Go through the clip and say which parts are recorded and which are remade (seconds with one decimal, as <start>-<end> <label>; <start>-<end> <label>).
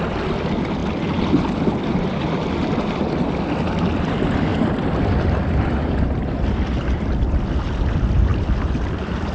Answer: 0.0-0.8 recorded; 0.8-2.2 remade; 2.2-4.5 recorded; 4.5-7.4 remade; 7.4-8.3 recorded; 8.3-9.3 remade